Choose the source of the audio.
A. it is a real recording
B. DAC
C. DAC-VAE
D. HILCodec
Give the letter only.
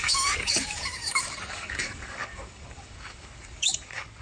B